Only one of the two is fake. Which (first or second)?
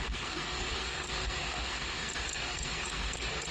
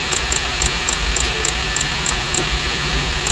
first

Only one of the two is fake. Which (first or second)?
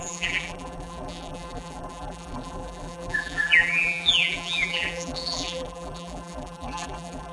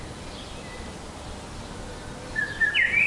first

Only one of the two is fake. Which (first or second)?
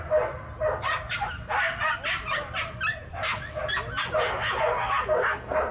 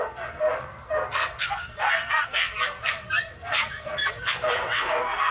second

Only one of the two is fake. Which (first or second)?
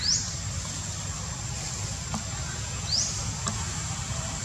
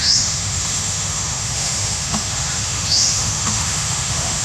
second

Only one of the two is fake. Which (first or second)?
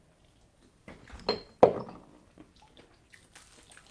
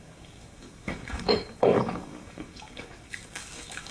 second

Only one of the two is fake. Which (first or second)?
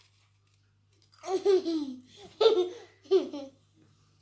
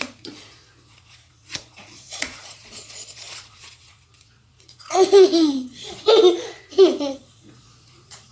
second